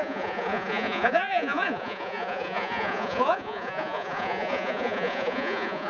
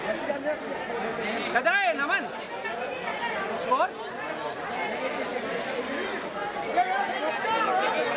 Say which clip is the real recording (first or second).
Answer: second